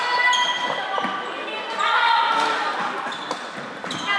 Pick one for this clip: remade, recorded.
recorded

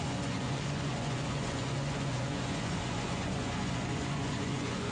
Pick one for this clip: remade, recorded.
remade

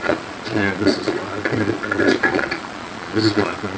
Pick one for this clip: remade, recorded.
remade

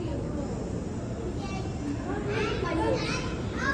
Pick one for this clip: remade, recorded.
recorded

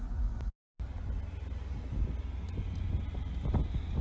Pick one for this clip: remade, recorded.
recorded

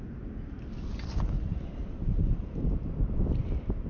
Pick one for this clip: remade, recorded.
recorded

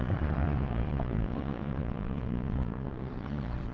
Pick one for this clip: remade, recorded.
remade